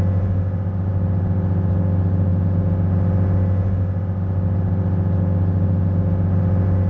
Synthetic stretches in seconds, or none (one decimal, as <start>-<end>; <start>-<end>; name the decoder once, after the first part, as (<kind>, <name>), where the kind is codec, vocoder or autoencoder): none